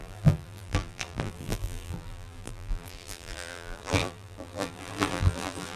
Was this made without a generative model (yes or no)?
no